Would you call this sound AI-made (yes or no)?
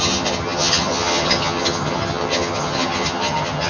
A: yes